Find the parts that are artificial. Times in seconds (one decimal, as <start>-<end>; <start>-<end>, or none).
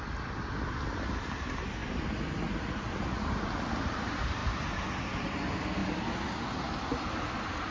none